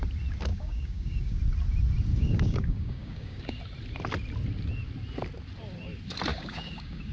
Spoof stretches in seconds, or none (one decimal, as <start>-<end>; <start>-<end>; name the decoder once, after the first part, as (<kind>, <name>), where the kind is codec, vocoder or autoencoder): 0.5-1.4 (codec, DAC); 2.1-3.6; 6.3-7.1